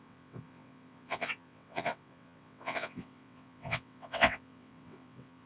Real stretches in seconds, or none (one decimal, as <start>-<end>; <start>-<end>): none